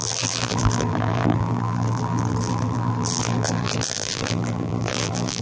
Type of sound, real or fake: fake